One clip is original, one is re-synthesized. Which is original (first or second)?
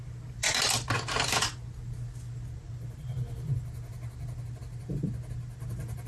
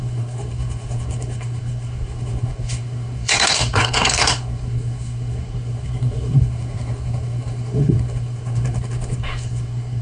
first